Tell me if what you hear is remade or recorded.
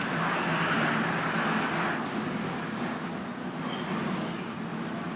recorded